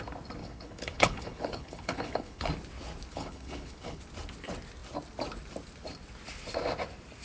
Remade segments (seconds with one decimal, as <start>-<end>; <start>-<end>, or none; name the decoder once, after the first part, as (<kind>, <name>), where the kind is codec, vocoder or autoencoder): 0.4-2.5 (codec, HILCodec); 3.1-4.0